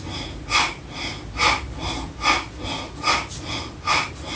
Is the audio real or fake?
real